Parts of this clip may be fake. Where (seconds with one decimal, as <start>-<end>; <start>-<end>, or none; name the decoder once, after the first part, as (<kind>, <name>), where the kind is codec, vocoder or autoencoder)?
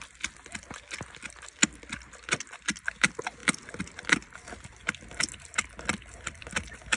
none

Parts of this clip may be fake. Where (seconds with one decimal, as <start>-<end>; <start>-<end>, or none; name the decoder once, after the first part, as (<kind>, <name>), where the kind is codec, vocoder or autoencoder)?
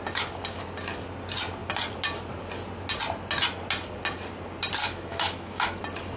4.8-5.8 (autoencoder, DAC-VAE)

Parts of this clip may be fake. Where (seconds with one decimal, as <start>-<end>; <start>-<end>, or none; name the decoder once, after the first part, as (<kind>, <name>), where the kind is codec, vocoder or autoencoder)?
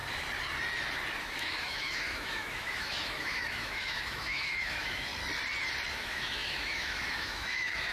1.2-5.1 (autoencoder, DAC-VAE); 5.9-7.9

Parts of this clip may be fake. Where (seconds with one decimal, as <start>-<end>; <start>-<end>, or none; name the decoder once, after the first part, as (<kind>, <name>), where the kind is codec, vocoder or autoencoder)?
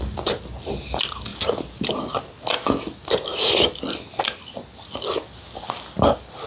none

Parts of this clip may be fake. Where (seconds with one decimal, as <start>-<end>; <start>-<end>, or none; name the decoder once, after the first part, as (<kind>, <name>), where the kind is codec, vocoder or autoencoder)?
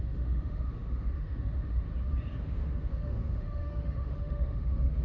0.0-1.9 (autoencoder, DAC-VAE); 2.4-5.0